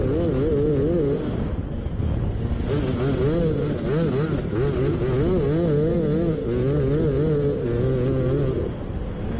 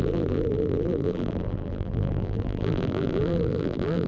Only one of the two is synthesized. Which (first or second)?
second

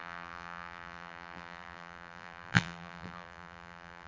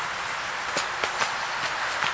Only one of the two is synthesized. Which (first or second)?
first